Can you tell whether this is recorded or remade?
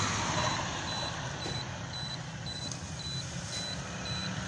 recorded